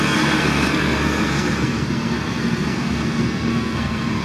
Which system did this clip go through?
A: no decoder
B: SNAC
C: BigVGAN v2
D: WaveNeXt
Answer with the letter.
B